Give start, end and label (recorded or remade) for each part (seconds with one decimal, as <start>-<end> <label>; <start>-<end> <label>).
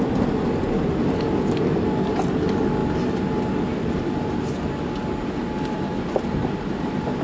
0.0-7.2 recorded